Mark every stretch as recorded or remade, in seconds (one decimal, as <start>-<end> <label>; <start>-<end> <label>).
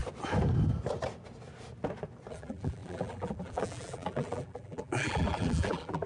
0.0-2.3 recorded; 2.3-6.1 remade